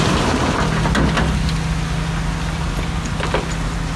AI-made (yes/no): no